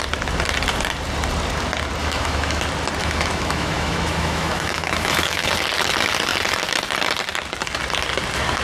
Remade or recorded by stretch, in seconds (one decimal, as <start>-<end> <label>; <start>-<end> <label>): 0.0-2.0 recorded; 2.0-2.6 remade; 2.6-3.0 recorded; 3.0-5.5 remade; 5.5-8.6 recorded